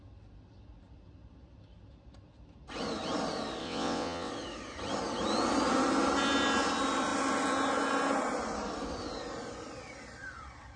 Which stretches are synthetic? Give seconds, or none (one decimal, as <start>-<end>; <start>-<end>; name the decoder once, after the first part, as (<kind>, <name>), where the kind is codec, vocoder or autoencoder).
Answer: 3.6-4.3 (vocoder, WaveNeXt)